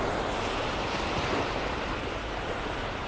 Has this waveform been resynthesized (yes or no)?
yes